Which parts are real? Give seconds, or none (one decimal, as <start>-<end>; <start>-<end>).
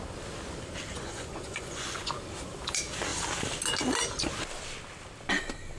0.0-0.9; 2.1-5.8